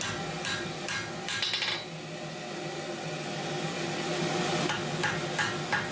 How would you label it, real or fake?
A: real